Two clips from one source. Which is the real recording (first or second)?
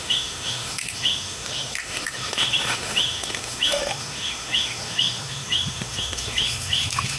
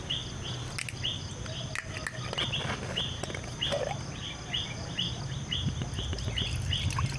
second